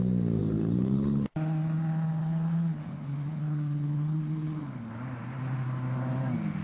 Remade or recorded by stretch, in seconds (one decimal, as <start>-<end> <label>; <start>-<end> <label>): 0.0-0.4 recorded; 0.4-1.3 remade; 1.3-2.2 recorded; 2.2-4.9 remade; 4.9-6.6 recorded